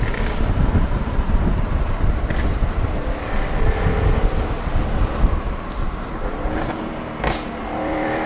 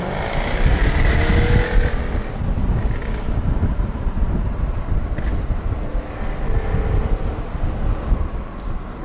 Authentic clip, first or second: second